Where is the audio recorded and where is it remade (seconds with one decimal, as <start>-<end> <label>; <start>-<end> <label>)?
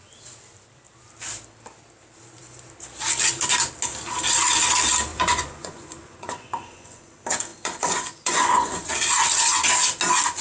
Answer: 0.0-5.1 recorded; 5.1-7.1 remade; 7.1-7.5 recorded; 7.5-8.9 remade; 8.9-10.4 recorded